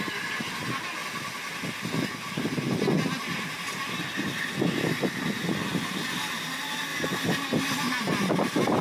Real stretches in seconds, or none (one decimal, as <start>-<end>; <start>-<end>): 0.0-8.8